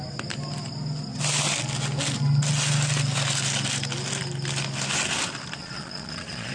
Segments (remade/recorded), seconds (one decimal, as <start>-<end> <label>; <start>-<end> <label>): 0.0-5.6 recorded; 5.6-6.5 remade